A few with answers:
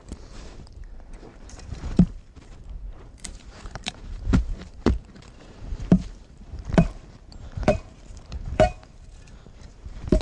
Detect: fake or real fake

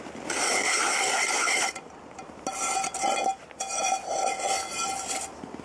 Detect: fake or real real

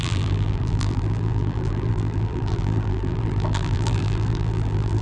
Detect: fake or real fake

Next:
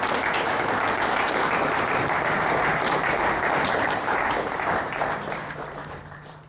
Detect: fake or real fake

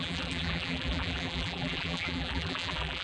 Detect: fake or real fake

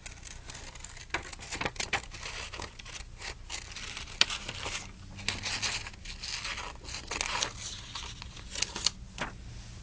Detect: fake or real real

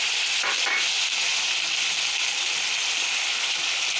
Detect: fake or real real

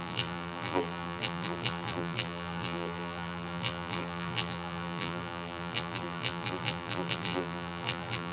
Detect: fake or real fake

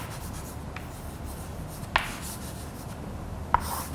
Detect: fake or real real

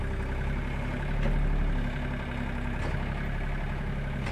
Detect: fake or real real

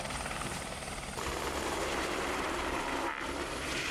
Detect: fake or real fake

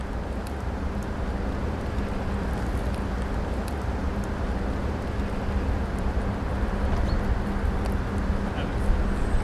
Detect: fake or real real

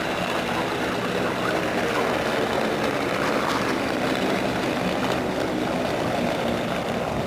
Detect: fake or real real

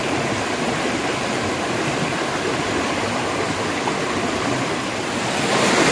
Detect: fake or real real